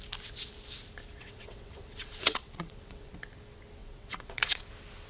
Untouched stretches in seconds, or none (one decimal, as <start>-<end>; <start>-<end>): 0.0-1.2; 3.1-3.8; 4.6-5.1